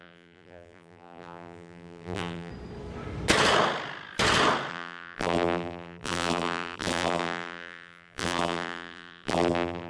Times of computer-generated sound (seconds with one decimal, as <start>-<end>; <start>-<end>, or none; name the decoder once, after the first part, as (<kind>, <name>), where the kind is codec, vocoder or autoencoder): 0.0-2.5 (vocoder, BigVGAN v2); 4.7-9.9